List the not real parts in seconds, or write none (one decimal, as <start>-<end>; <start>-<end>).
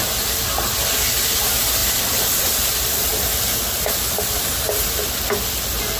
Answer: none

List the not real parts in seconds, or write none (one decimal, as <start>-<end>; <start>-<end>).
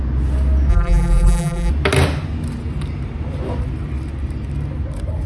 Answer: 0.7-1.7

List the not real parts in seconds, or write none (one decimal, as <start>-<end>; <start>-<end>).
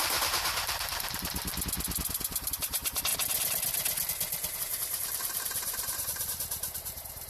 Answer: 0.0-1.5; 2.1-3.1; 4.6-7.3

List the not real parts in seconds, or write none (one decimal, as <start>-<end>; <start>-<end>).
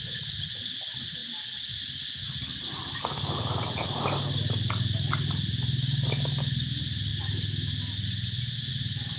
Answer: none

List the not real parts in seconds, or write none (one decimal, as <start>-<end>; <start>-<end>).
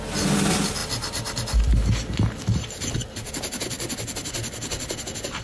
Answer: none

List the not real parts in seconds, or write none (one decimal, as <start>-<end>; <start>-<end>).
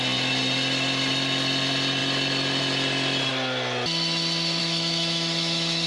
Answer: 4.6-5.9